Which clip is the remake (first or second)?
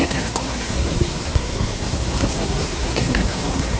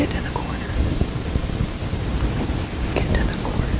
first